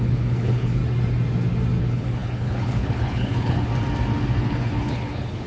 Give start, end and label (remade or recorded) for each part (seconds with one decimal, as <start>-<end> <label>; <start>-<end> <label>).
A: 0.0-0.8 remade; 0.8-1.8 recorded; 1.8-3.7 remade; 3.7-4.4 recorded; 4.4-5.5 remade